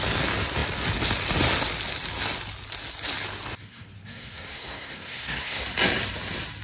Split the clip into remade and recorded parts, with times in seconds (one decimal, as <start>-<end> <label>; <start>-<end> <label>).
0.0-3.6 recorded; 3.6-5.6 remade; 5.6-6.6 recorded